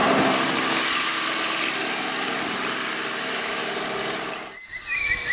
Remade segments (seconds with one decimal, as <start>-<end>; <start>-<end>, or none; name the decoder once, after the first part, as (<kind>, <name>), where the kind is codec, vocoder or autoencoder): 3.2-3.6 (autoencoder, DAC-VAE)